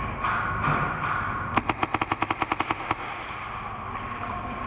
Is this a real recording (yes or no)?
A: yes